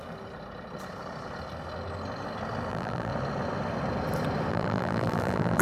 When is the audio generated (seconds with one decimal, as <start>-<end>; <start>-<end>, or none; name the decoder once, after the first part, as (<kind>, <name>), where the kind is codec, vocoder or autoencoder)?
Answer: 2.7-3.1 (vocoder, BigVGAN v2); 4.5-5.6